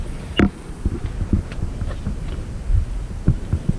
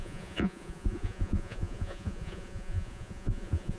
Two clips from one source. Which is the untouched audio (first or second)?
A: first